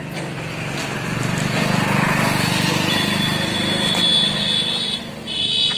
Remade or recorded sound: recorded